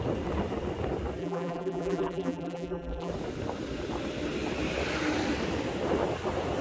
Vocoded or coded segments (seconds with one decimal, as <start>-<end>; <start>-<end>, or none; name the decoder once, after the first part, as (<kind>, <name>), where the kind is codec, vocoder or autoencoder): 1.2-3.1 (vocoder, BigVGAN v2)